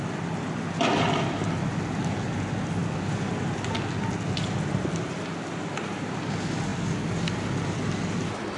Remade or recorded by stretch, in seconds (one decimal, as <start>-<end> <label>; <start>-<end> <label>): 0.0-8.6 recorded